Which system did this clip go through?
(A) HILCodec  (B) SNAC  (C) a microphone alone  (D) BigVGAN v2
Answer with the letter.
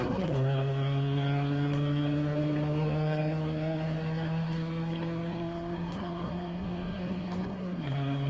B